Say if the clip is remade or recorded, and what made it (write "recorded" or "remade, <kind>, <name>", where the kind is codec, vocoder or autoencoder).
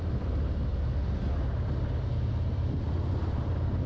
remade, vocoder, BigVGAN v2